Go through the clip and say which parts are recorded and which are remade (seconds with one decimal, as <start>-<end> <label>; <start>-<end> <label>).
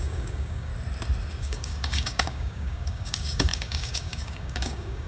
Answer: 0.0-0.7 remade; 0.7-1.4 recorded; 1.4-5.1 remade